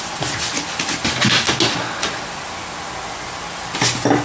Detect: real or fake real